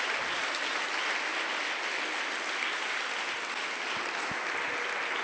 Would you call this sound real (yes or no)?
yes